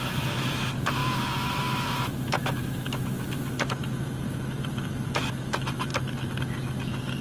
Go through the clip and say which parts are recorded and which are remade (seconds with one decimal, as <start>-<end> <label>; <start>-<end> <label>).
0.0-5.9 remade; 5.9-6.4 recorded; 6.4-7.2 remade